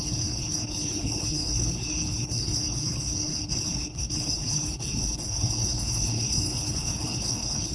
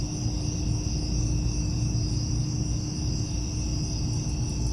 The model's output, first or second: first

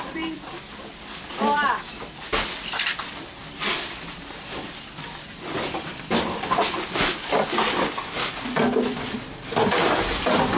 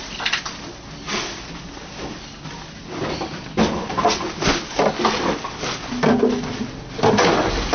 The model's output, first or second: first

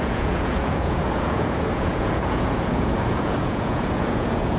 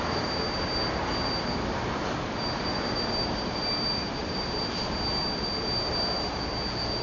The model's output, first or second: first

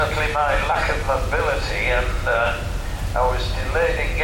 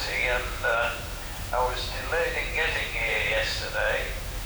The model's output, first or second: second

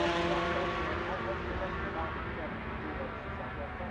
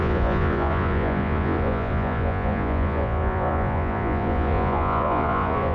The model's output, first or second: second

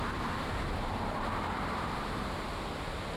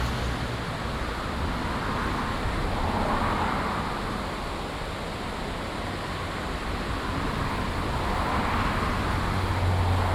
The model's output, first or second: first